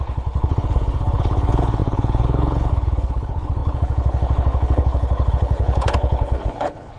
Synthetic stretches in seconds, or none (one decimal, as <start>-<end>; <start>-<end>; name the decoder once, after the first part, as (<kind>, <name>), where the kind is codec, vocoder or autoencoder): 0.0-7.0 (codec, HILCodec)